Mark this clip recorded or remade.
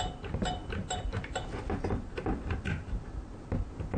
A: recorded